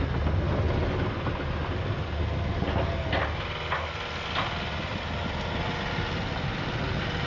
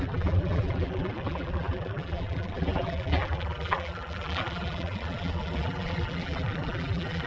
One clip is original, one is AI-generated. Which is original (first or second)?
first